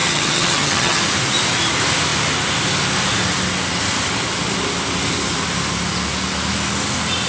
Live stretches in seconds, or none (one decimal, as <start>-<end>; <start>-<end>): 1.0-7.3